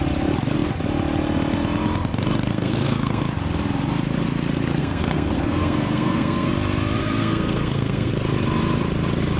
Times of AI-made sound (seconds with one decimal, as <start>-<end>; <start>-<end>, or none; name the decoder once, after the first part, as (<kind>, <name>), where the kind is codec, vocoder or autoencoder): 2.5-3.2 (codec, SNAC); 4.8-6.5; 7.0-8.1